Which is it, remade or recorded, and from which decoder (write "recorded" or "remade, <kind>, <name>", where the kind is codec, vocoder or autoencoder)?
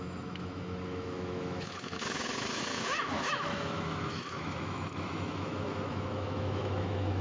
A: remade, autoencoder, DAC-VAE